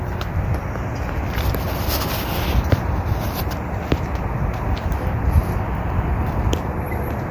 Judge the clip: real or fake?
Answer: fake